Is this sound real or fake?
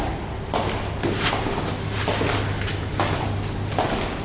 real